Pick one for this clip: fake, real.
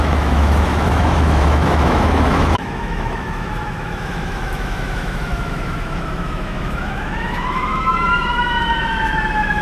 fake